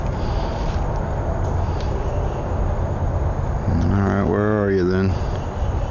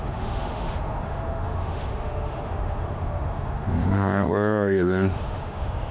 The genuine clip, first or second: first